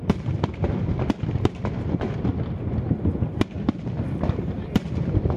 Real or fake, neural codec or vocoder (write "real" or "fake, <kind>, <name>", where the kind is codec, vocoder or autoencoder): real